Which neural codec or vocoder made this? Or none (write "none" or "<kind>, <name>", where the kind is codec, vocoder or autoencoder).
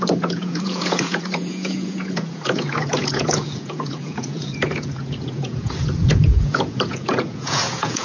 vocoder, Vocos